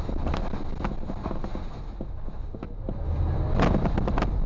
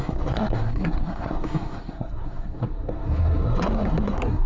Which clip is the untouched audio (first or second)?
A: first